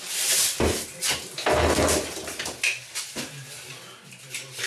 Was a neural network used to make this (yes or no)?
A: no